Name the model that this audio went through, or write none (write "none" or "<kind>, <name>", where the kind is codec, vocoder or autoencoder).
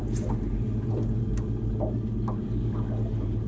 none